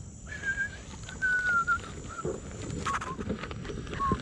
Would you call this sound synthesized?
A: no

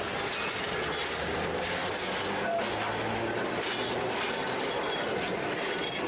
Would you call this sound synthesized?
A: no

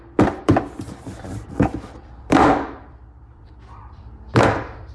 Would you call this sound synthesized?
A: yes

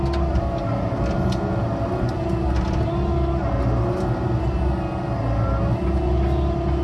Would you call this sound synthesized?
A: no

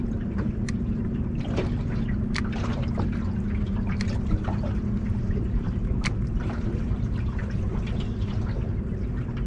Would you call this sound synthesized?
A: yes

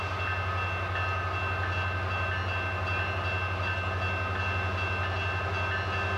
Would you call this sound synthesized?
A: no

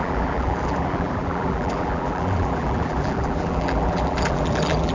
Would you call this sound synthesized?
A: yes